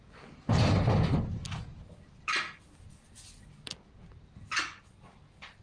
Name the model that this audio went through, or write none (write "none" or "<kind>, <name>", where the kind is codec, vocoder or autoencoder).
none